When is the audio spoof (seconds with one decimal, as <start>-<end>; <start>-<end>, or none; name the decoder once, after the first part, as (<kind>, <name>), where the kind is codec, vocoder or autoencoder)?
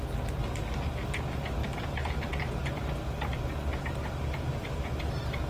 1.6-2.2 (vocoder, BigVGAN v2); 3.7-5.1